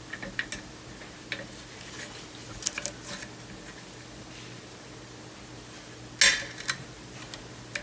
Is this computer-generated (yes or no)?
no